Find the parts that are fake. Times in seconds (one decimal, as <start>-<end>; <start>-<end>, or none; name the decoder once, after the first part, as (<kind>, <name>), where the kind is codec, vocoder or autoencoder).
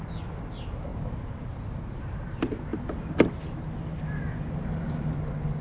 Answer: none